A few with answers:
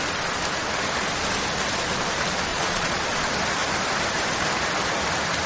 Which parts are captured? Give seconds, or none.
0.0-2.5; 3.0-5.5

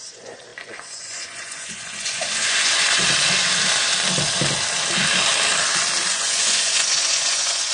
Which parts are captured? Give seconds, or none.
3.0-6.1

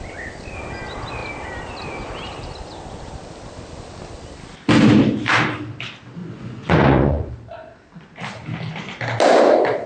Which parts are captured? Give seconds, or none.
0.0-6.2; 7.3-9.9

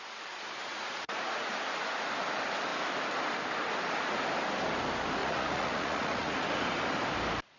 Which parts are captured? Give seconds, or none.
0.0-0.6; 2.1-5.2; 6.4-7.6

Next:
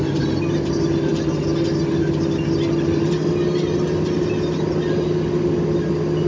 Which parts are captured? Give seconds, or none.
0.0-6.3

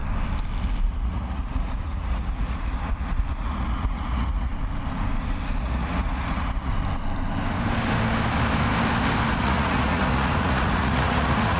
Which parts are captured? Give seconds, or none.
0.0-0.8; 4.5-5.6; 6.7-9.3

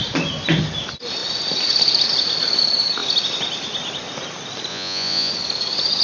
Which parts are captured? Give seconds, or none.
0.0-4.7; 5.3-6.0